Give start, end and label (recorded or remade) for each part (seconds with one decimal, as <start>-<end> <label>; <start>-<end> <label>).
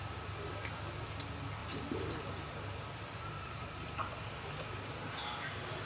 0.0-1.6 recorded; 1.6-4.5 remade; 4.5-5.9 recorded